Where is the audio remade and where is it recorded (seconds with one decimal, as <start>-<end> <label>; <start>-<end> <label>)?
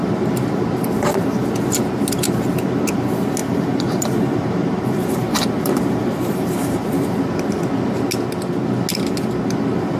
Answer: 0.0-0.5 remade; 0.5-3.4 recorded; 3.4-7.1 remade; 7.1-10.0 recorded